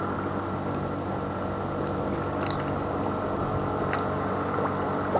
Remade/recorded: recorded